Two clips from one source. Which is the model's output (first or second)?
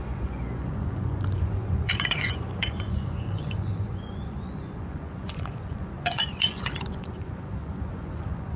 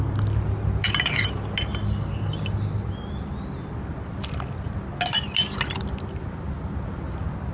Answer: first